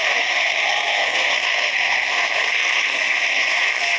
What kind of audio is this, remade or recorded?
remade